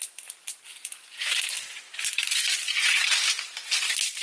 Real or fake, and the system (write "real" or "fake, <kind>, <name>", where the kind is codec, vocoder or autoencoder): real